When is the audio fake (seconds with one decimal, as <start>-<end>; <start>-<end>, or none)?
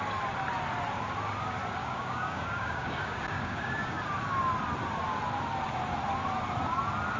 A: 1.8-4.0